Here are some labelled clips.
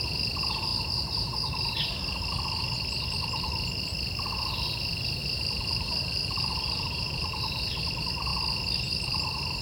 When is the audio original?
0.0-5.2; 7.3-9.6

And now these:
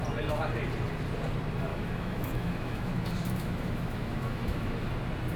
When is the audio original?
0.0-1.7; 4.9-5.4

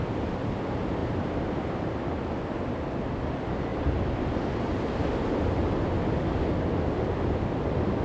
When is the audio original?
0.0-8.0

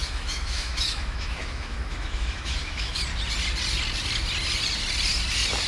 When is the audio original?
3.0-5.7

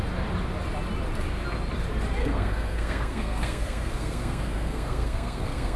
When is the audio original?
0.0-2.2

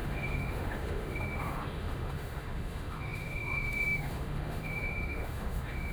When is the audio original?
none

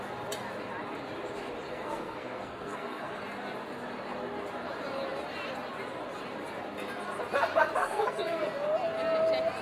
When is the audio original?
0.0-1.7; 3.2-7.8; 8.4-9.6

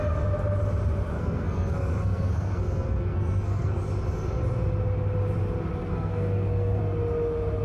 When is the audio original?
0.0-1.1; 3.8-5.8; 6.8-7.6